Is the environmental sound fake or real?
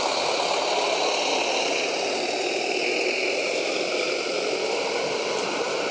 real